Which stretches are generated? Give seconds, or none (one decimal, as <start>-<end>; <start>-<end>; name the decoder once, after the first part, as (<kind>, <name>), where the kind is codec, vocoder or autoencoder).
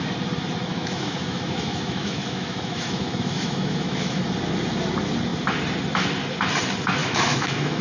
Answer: 0.7-4.2 (autoencoder, DAC-VAE); 7.0-7.8